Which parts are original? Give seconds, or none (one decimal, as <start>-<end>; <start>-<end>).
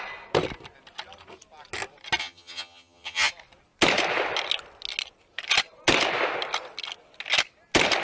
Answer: 0.0-2.2; 3.3-8.0